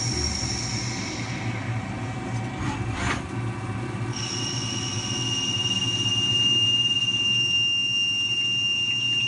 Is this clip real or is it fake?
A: real